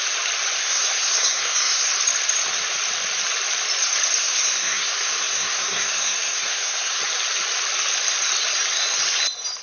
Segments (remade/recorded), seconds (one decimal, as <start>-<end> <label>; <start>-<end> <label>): 0.0-0.6 recorded; 0.6-2.0 remade; 2.0-4.2 recorded; 4.2-7.0 remade; 7.0-9.6 recorded